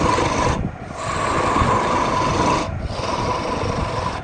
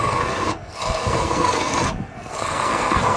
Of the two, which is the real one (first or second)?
first